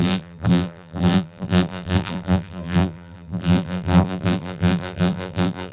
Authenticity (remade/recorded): remade